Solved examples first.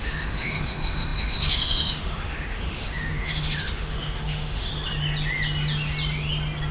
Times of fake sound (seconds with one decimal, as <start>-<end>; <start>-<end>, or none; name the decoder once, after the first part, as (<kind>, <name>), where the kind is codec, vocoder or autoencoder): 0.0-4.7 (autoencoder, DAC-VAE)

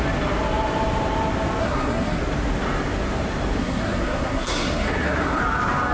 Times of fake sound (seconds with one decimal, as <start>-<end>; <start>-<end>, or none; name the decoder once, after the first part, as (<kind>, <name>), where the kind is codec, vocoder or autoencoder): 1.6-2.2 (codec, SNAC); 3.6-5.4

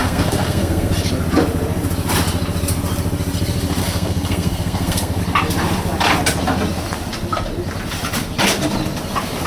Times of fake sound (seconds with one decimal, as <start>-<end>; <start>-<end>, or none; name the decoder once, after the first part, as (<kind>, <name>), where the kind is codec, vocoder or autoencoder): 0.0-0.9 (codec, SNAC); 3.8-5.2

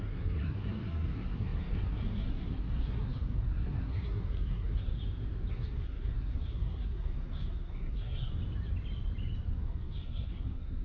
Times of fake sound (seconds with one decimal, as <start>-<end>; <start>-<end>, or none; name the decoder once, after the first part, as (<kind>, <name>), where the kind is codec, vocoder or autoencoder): 0.0-4.9 (codec, SNAC); 5.5-8.3; 9.5-10.8

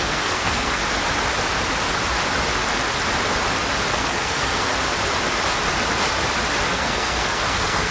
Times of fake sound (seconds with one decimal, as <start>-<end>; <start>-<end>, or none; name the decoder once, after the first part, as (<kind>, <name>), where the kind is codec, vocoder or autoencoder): 0.0-0.8 (codec, SNAC); 3.9-4.7; 6.7-7.9

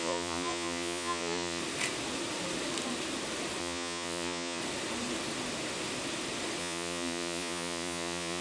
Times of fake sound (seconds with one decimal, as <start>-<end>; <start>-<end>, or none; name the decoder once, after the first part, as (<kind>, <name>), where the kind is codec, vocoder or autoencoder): 0.0-1.6 (vocoder, Vocos); 3.6-4.6; 6.6-8.4